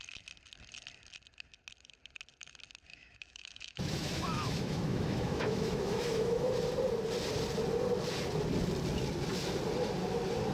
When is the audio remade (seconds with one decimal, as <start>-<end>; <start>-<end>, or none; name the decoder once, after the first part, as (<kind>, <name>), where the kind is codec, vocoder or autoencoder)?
2.9-6.5 (autoencoder, DAC-VAE)